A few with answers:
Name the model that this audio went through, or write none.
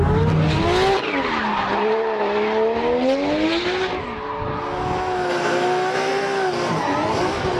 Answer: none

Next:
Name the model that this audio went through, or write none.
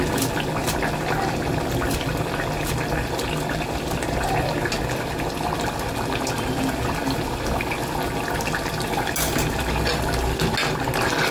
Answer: none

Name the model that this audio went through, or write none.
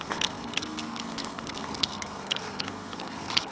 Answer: codec, SNAC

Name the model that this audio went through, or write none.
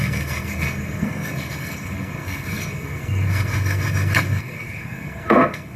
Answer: codec, SNAC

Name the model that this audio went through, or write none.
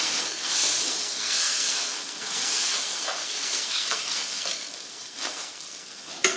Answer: codec, SNAC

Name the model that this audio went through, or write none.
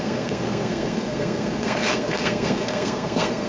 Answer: codec, SNAC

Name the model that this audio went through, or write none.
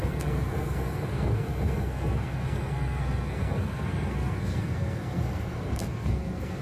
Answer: codec, SNAC